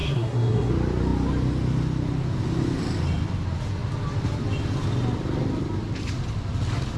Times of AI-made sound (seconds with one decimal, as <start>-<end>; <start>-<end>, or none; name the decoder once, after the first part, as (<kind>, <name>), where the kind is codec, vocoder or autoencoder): 0.0-0.7 (codec, SNAC)

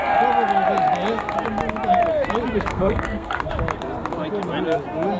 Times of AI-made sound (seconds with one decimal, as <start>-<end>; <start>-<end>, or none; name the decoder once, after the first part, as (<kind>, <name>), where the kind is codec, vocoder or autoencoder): 2.7-3.5 (codec, SNAC)

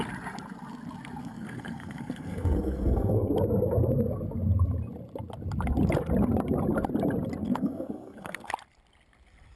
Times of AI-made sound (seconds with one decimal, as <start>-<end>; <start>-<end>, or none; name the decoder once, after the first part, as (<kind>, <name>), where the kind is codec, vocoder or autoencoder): 1.2-3.3 (codec, SNAC); 7.4-8.5

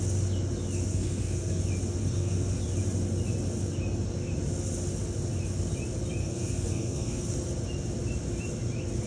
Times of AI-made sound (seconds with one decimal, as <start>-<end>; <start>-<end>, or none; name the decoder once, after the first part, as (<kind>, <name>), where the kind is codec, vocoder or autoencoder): 0.9-1.6 (codec, SNAC); 2.0-2.6; 6.2-7.2

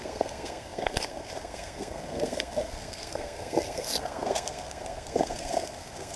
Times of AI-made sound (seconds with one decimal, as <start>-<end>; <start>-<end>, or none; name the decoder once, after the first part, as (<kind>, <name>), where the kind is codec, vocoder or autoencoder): 0.0-6.2 (codec, SNAC)

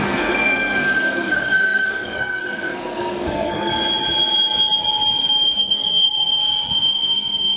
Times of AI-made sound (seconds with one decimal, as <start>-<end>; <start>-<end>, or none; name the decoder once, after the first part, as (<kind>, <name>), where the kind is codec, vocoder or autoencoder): 0.0-3.7 (codec, SNAC); 5.6-6.4; 6.9-7.6